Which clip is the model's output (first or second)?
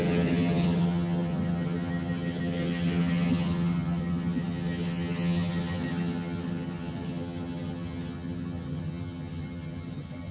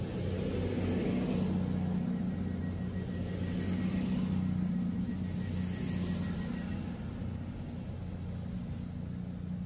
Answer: first